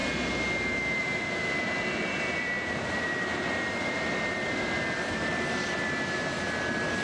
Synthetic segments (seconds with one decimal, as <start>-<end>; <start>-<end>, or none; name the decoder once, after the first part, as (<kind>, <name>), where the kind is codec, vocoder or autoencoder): 1.0-7.0 (vocoder, BigVGAN v2)